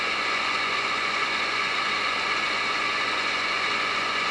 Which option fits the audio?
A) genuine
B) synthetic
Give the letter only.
B